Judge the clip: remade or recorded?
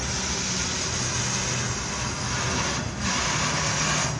recorded